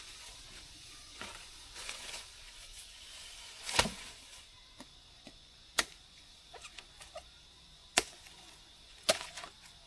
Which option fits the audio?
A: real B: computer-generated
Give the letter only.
B